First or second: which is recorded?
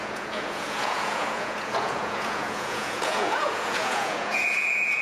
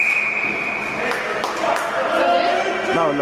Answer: second